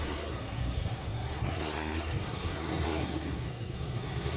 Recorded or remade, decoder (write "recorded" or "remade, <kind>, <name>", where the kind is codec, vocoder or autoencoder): remade, codec, SNAC